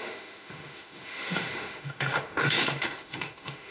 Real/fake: fake